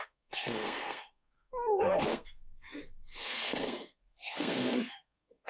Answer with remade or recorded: remade